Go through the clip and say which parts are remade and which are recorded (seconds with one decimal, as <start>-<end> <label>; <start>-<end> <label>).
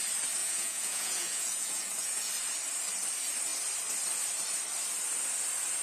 0.0-0.4 recorded; 0.4-2.3 remade; 2.3-5.8 recorded